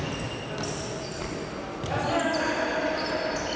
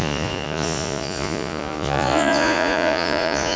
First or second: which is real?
first